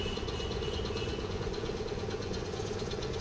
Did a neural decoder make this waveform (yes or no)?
yes